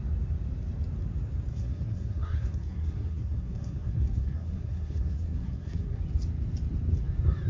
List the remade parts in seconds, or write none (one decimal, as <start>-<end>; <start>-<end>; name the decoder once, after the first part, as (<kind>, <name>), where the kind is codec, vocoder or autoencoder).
1.5-6.0 (codec, SNAC)

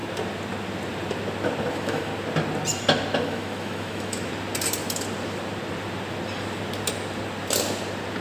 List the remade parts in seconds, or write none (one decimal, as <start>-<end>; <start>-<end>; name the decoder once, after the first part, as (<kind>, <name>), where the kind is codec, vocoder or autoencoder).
1.7-2.1 (autoencoder, DAC-VAE); 3.2-4.3

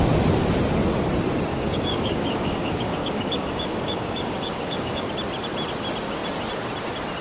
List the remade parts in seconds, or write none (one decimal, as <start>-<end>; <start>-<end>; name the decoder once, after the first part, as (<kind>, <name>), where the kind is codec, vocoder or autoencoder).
1.5-5.1 (codec, DAC)

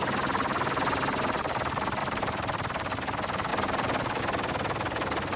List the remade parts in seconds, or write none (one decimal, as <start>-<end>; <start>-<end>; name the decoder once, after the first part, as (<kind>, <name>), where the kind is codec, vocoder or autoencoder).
2.0-2.9 (vocoder, BigVGAN v2); 3.5-4.2

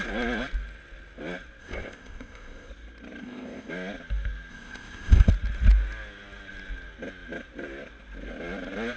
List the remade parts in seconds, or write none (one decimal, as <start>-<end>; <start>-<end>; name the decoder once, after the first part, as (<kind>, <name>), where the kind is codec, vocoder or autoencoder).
1.6-2.7 (codec, ZipCodec); 3.2-3.7; 4.5-5.3

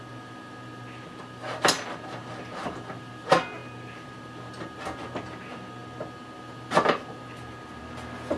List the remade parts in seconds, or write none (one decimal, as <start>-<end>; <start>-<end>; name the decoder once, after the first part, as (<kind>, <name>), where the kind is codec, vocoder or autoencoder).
none

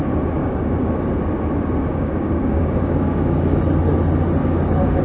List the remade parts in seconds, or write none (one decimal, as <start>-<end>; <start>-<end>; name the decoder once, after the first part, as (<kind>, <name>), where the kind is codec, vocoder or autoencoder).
0.4-1.1 (codec, DAC); 1.9-3.6; 4.4-5.0

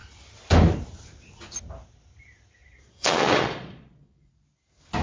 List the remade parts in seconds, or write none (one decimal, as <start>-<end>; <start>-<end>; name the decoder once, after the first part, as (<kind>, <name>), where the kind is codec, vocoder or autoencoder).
2.6-4.3 (vocoder, Vocos)